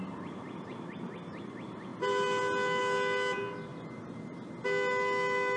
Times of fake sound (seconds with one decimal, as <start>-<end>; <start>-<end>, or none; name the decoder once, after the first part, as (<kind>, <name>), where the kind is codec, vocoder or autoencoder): none